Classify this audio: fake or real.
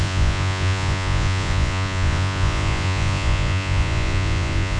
fake